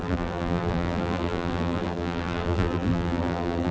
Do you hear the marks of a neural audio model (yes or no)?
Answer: yes